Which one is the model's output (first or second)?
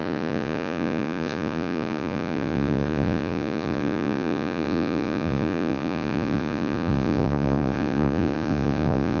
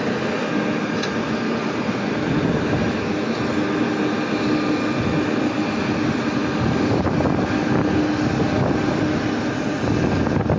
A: first